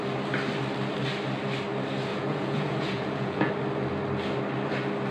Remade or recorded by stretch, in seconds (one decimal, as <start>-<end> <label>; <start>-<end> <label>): 0.0-2.1 recorded; 2.1-3.5 remade; 3.5-5.1 recorded